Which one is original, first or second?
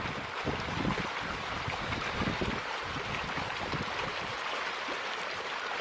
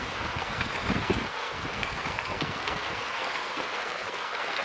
first